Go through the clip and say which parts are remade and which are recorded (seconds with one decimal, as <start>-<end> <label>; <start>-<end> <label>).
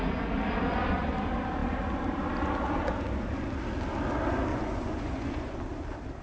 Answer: 0.0-4.5 recorded; 4.5-5.6 remade; 5.6-6.2 recorded